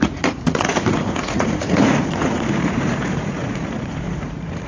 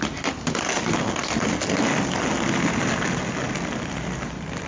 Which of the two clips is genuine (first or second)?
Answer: second